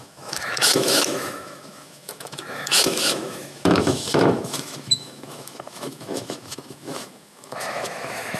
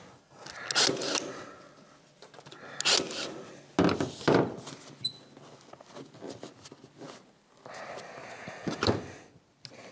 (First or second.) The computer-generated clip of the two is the first